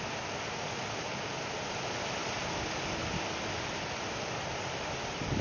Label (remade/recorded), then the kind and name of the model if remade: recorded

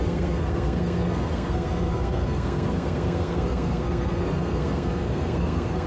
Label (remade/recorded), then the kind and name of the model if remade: remade, codec, SNAC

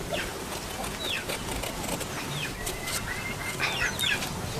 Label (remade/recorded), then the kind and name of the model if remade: recorded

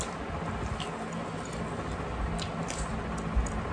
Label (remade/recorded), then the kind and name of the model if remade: recorded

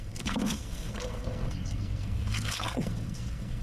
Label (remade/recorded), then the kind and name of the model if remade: remade, codec, SNAC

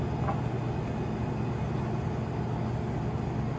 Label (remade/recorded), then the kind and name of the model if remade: recorded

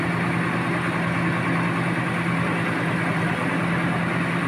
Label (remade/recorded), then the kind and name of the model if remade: recorded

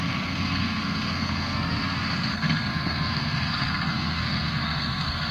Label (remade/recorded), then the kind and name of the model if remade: remade, codec, SNAC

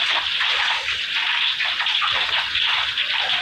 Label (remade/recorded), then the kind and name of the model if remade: remade, vocoder, BigVGAN v2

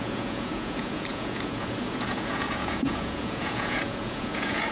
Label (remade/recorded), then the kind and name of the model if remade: remade, vocoder, Vocos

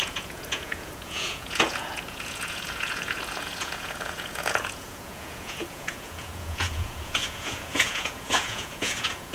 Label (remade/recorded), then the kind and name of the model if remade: remade, vocoder, Vocos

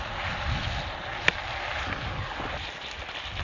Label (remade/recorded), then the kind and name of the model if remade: recorded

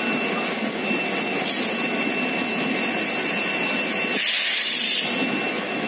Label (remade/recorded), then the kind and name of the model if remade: recorded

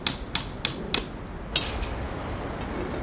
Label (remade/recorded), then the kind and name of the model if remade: recorded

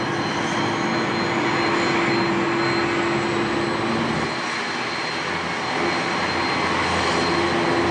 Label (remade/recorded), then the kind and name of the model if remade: recorded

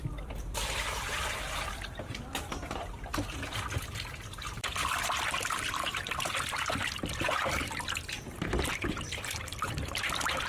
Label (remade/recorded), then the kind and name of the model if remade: remade, vocoder, BigVGAN v2